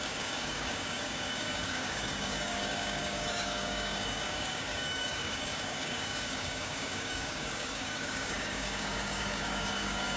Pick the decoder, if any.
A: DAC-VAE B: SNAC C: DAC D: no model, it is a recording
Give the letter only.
C